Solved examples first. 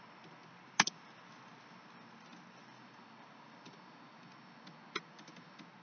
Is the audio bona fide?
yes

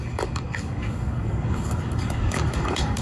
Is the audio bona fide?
no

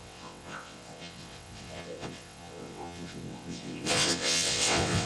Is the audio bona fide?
no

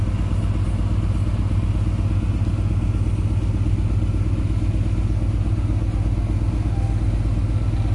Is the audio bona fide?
yes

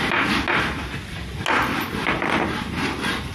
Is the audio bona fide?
yes